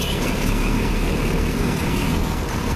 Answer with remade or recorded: remade